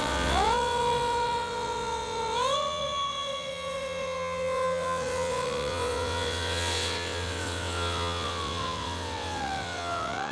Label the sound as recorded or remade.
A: remade